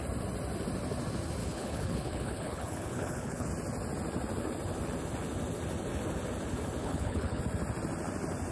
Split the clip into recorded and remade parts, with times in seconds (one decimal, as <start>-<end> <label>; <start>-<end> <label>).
0.0-1.4 recorded; 1.4-3.5 remade; 3.5-6.8 recorded; 6.8-7.4 remade; 7.4-8.5 recorded